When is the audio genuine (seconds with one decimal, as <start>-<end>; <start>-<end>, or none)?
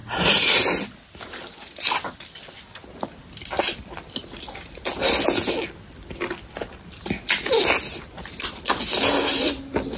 0.0-10.0